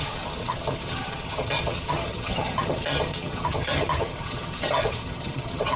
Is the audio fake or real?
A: fake